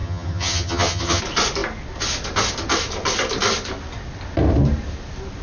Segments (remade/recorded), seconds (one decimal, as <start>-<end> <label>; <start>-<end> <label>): 0.0-1.2 remade; 1.2-5.4 recorded